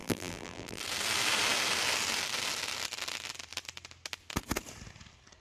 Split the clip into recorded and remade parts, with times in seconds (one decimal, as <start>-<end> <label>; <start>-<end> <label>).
0.0-0.8 remade; 0.8-5.4 recorded